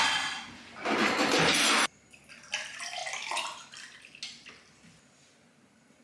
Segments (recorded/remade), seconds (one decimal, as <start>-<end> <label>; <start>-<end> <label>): 0.0-6.0 recorded